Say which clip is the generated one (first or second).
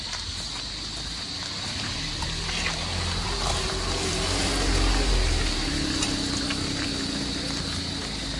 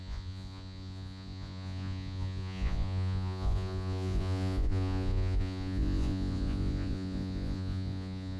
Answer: second